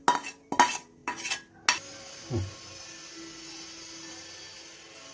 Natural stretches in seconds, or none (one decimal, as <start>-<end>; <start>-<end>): 0.0-5.1